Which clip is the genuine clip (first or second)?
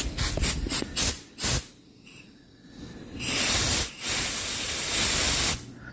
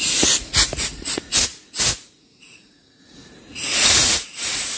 first